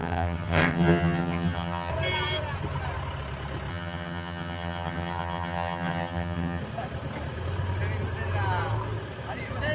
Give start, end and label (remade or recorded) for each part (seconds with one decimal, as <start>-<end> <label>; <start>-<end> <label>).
0.0-1.9 remade; 1.9-3.7 recorded; 3.7-6.6 remade; 6.6-9.7 recorded

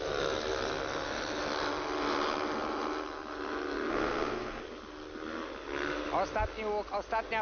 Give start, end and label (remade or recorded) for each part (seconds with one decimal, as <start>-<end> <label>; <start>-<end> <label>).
0.0-3.9 recorded; 3.9-4.6 remade; 4.6-7.4 recorded

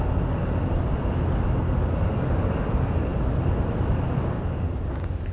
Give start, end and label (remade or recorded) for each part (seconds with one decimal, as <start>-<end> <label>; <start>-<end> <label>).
0.0-5.3 recorded